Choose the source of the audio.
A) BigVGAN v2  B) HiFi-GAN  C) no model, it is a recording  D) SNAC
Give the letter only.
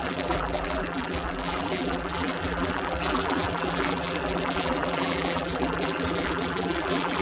A